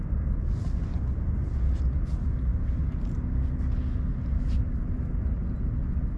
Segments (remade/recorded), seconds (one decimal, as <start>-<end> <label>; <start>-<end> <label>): 0.0-6.2 recorded